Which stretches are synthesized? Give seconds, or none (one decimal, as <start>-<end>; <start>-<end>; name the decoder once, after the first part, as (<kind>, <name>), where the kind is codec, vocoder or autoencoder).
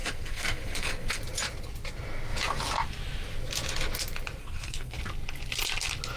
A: 0.0-1.2 (codec, SNAC); 4.4-5.0